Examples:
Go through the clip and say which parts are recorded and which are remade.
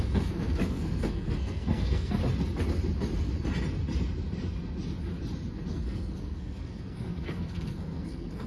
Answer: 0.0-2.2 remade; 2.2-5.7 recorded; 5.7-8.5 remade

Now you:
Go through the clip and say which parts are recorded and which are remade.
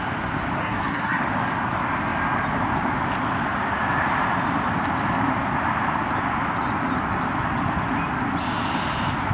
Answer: 0.0-0.6 recorded; 0.6-1.2 remade; 1.2-9.3 recorded